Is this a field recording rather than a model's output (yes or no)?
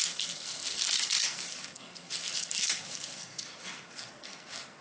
no